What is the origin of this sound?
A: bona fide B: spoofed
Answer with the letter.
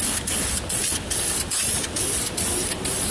A